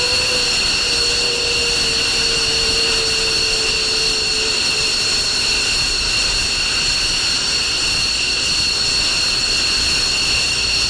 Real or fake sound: real